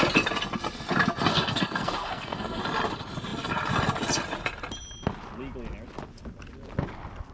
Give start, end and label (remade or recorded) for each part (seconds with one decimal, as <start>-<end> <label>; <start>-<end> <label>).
0.0-1.3 recorded; 1.3-2.6 remade; 2.6-7.3 recorded